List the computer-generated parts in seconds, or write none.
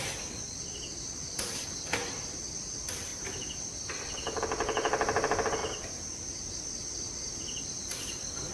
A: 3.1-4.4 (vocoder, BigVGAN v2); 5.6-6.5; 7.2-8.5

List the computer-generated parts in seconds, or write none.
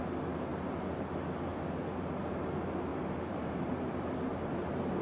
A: 2.9-3.8 (vocoder, BigVGAN v2)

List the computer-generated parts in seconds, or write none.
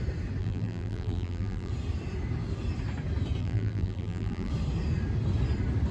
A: 0.4-1.7 (vocoder, BigVGAN v2); 3.4-4.5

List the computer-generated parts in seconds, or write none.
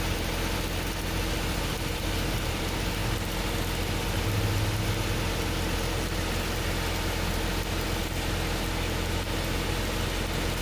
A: 1.7-2.6 (vocoder, BigVGAN v2)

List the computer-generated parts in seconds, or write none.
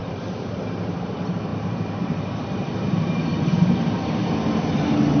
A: 0.0-3.5 (vocoder, BigVGAN v2)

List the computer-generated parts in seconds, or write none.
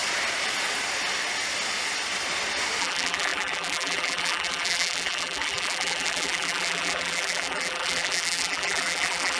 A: 2.8-9.4 (vocoder, BigVGAN v2)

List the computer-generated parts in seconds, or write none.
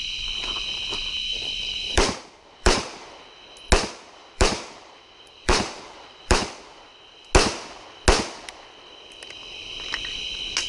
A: 1.3-3.1 (vocoder, BigVGAN v2); 4.2-6.6